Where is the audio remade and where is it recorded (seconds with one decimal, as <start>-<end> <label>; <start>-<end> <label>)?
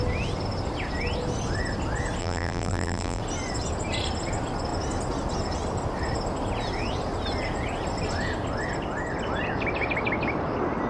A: 0.0-2.2 recorded; 2.2-3.2 remade; 3.2-10.9 recorded